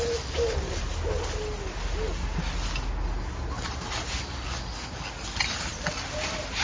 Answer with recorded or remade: recorded